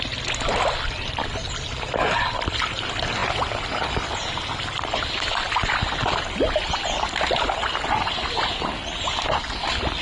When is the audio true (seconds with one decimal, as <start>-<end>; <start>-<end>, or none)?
0.0-10.0